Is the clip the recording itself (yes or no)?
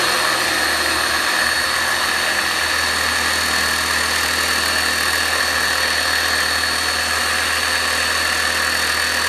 yes